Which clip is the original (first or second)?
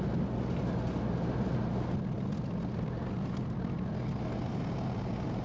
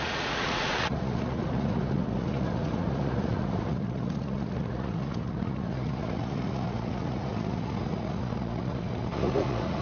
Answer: first